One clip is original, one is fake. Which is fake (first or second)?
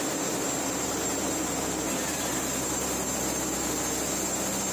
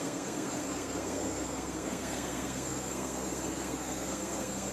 second